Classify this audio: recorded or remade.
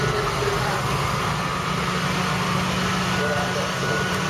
recorded